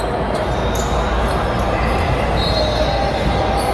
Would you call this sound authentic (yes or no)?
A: yes